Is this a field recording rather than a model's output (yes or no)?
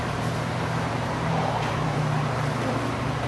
no